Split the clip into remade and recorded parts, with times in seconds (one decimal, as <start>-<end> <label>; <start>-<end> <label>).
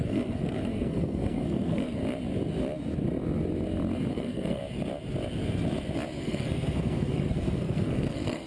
0.0-2.0 remade; 2.0-4.1 recorded; 4.1-4.6 remade; 4.6-6.2 recorded; 6.2-8.5 remade